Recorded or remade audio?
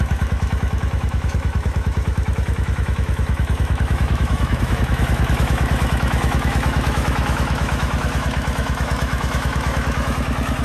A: remade